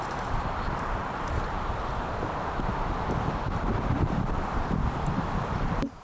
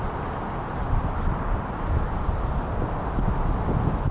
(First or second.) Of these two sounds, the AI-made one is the first